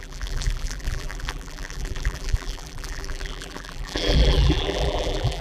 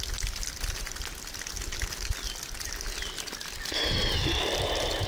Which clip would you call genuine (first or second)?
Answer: second